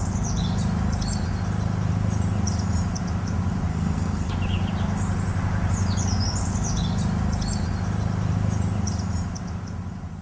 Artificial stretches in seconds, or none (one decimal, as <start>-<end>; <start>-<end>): 3.7-4.3